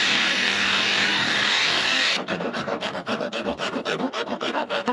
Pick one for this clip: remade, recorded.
remade